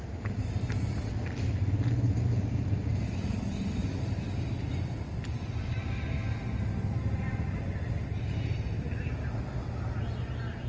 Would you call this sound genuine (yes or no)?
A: yes